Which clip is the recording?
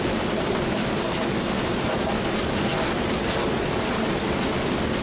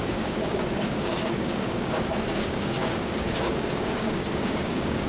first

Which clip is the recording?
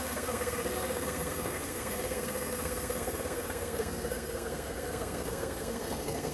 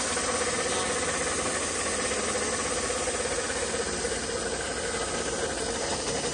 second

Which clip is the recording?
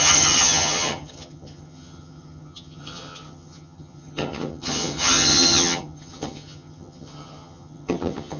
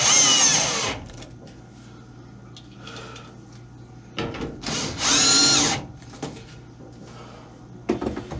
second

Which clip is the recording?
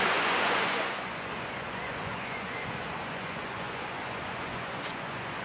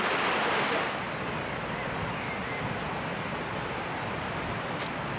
second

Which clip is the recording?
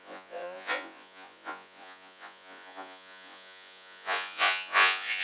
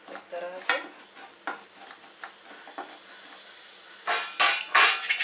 second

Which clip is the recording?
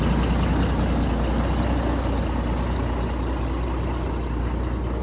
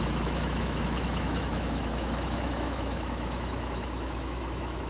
first